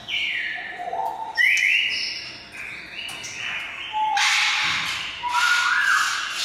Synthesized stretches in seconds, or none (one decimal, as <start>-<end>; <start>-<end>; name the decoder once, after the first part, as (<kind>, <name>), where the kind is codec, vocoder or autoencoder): none